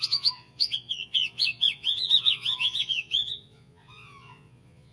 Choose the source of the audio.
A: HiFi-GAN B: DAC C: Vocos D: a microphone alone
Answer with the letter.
C